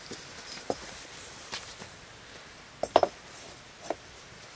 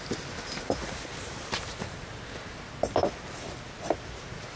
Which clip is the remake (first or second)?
first